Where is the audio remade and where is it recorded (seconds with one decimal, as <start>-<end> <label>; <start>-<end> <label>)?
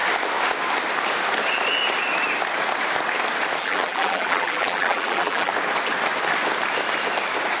0.0-3.6 recorded; 3.6-5.5 remade; 5.5-7.6 recorded